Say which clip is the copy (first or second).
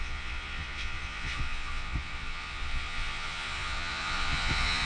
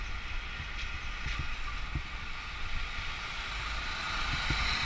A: first